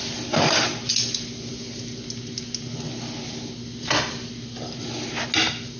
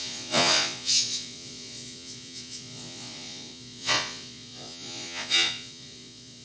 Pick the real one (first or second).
first